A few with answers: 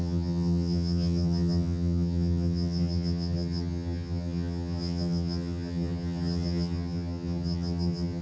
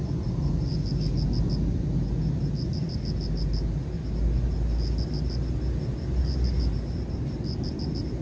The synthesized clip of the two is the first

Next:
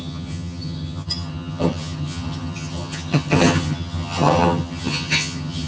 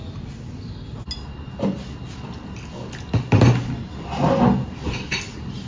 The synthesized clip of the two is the first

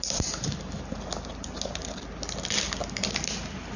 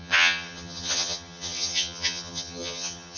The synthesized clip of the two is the second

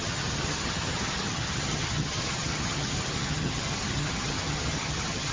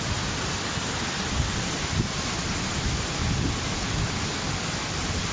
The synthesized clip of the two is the first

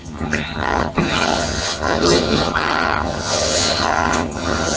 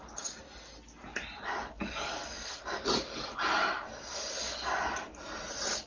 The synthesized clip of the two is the first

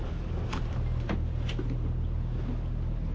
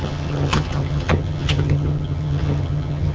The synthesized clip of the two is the second